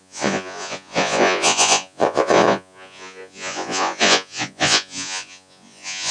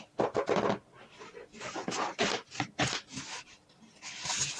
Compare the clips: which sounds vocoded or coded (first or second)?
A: first